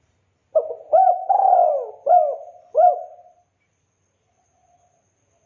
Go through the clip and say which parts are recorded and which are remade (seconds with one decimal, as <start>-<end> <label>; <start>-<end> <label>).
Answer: 0.0-5.5 recorded